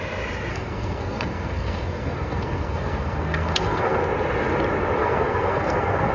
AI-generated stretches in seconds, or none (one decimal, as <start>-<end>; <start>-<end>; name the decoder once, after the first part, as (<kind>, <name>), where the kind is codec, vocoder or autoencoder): 0.5-4.0 (codec, SNAC); 5.0-6.1